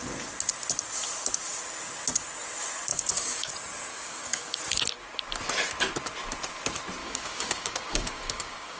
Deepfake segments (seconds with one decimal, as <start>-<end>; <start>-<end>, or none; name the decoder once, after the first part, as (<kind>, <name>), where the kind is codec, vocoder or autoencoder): 2.9-3.5 (codec, DAC); 3.9-4.6; 7.0-8.8